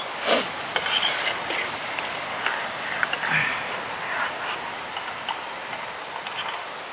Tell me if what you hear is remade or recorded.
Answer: recorded